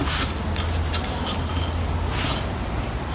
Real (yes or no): yes